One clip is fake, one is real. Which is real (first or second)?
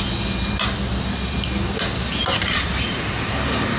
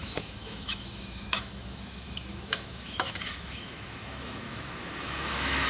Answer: first